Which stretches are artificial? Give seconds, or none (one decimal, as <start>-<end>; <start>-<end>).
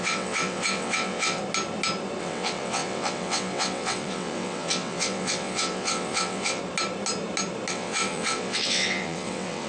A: 0.0-1.4; 2.2-6.6; 7.7-9.7